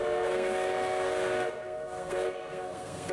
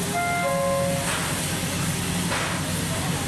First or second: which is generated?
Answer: first